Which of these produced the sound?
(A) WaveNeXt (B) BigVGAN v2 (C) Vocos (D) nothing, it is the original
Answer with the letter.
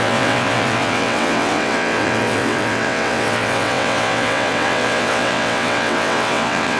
A